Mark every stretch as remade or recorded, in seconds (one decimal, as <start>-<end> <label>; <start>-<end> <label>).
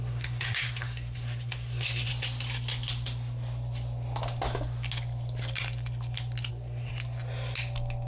0.0-2.1 remade; 2.1-6.5 recorded; 6.5-6.9 remade; 6.9-8.1 recorded